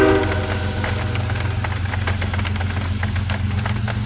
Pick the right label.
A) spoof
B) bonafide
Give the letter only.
B